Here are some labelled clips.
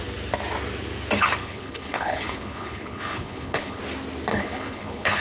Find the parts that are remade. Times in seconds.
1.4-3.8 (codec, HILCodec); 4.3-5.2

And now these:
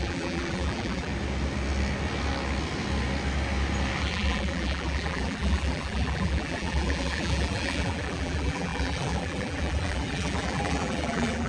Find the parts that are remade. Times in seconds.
0.0-1.1 (vocoder, BigVGAN v2); 4.0-11.5

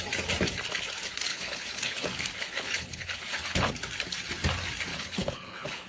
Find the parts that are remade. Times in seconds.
1.3-3.7 (codec, HILCodec); 4.9-5.9

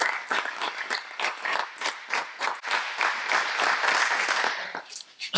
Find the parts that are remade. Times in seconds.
0.0-1.6 (codec, DAC); 4.8-5.4